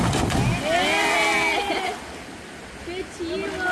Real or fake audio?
real